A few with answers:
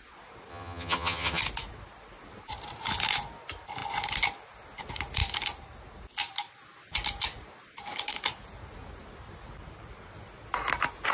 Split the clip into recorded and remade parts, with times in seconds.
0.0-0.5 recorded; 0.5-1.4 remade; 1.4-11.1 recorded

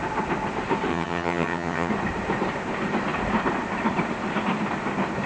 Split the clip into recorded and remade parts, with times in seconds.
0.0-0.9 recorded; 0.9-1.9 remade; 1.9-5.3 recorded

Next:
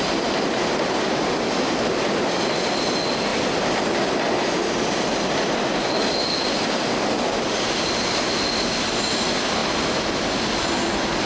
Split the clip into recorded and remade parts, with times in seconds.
0.0-11.3 recorded

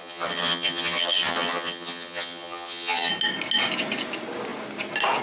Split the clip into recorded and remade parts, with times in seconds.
0.0-3.1 remade; 3.1-5.2 recorded

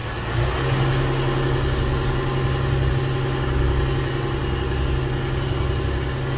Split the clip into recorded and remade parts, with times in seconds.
0.0-6.4 recorded

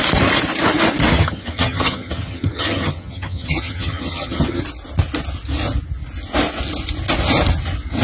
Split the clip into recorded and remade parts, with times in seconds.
0.0-1.1 recorded; 1.1-4.6 remade; 4.6-8.0 recorded

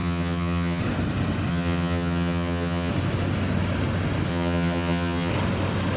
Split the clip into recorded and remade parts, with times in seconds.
0.0-0.8 remade; 0.8-1.5 recorded; 1.5-2.9 remade; 2.9-4.3 recorded; 4.3-5.3 remade; 5.3-6.0 recorded